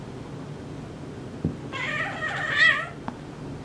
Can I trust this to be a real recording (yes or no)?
yes